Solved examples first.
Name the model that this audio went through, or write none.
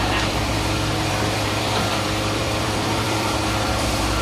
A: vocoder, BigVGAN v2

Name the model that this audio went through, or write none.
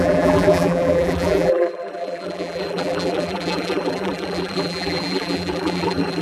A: vocoder, BigVGAN v2